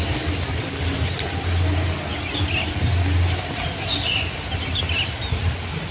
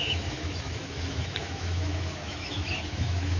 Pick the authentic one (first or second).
first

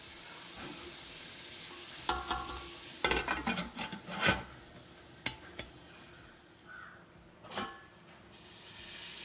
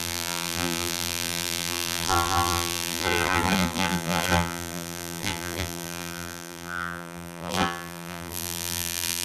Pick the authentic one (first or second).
first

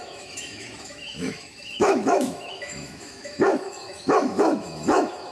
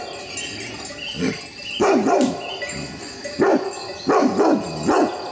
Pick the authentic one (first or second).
second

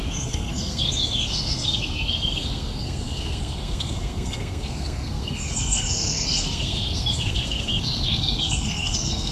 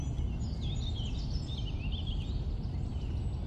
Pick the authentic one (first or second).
second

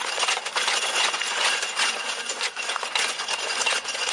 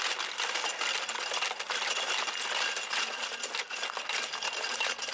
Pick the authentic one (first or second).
second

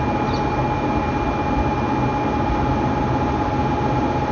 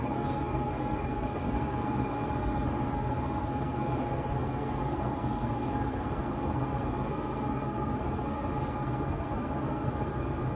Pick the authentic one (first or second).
first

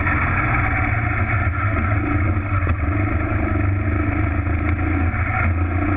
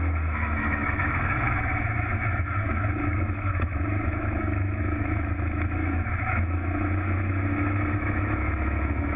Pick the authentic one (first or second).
first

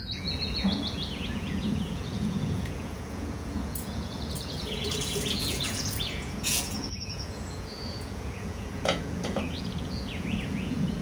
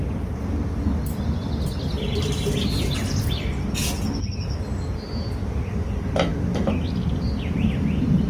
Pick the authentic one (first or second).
second